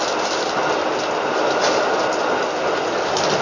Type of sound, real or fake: real